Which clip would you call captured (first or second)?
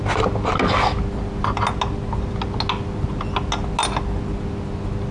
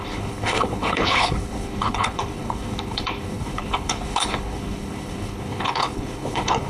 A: first